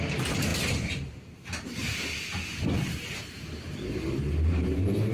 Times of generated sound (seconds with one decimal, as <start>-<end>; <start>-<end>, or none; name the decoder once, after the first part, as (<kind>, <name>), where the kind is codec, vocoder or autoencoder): none